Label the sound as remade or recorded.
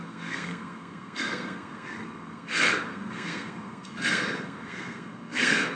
remade